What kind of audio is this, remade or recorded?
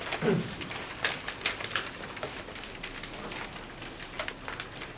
recorded